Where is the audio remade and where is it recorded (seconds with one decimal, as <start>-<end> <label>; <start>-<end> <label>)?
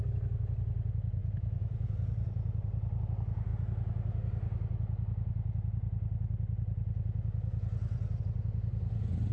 0.0-1.2 recorded; 1.2-3.0 remade; 3.0-9.3 recorded